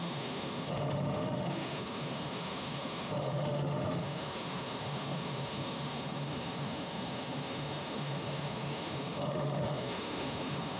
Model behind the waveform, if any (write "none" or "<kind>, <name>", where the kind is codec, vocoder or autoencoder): autoencoder, DAC-VAE